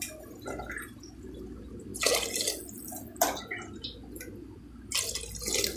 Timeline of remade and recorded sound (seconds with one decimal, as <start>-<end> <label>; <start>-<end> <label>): 0.0-5.8 recorded